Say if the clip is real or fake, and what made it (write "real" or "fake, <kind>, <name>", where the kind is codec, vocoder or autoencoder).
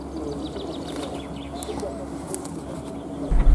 real